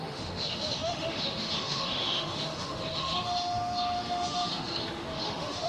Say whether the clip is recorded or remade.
remade